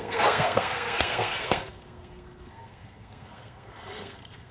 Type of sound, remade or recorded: remade